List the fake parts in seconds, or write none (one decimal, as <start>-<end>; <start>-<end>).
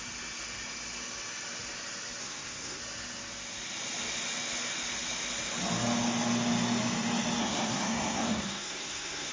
2.2-2.8; 7.4-9.3